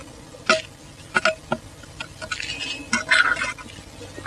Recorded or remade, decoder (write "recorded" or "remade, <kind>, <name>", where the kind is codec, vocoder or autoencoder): recorded